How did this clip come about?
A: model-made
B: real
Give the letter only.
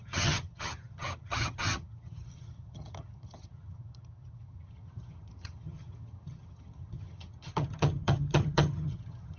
A